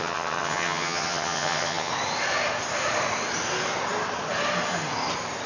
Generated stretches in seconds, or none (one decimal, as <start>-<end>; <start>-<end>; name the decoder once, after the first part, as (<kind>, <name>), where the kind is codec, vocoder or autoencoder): 0.0-1.9 (vocoder, HiFi-GAN)